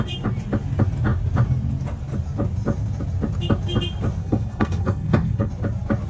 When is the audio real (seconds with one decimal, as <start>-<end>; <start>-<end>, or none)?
0.0-4.2; 5.5-6.1